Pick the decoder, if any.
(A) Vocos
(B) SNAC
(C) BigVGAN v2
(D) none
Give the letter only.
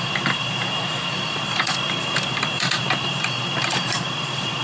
C